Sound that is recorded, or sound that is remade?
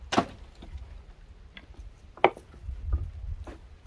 recorded